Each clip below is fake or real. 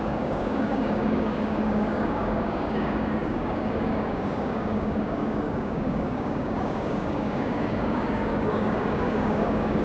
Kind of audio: fake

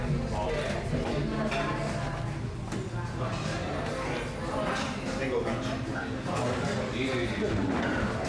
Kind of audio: real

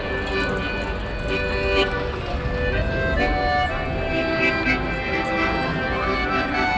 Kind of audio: real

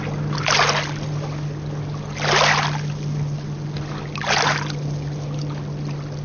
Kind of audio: real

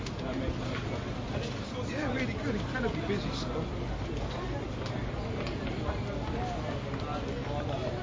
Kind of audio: real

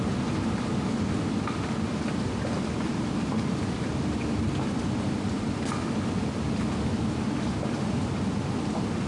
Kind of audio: real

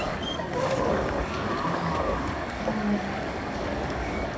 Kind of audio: fake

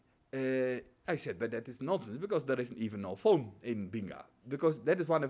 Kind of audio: real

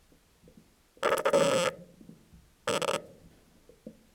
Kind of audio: real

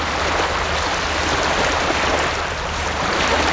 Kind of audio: real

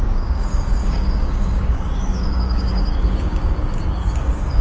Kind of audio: fake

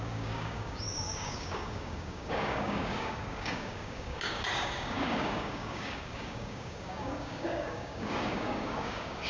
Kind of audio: fake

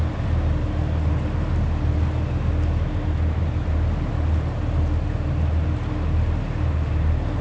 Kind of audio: real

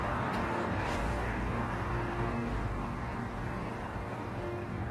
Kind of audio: fake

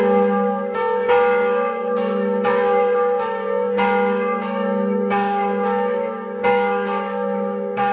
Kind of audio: fake